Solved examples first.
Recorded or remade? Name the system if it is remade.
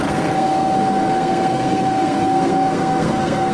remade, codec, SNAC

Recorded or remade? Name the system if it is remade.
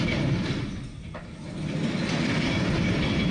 recorded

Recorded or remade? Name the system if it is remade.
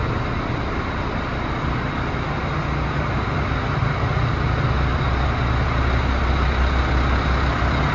recorded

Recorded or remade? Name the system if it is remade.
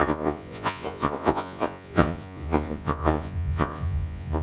remade, vocoder, Vocos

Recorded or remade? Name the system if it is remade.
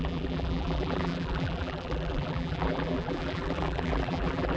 remade, vocoder, BigVGAN v2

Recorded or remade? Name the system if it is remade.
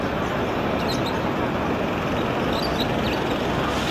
recorded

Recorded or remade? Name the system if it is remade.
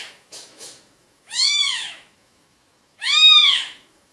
remade, autoencoder, DAC-VAE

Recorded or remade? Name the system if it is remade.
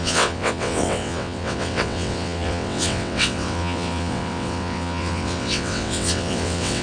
remade, vocoder, WaveNeXt